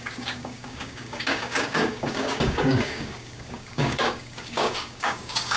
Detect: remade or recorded remade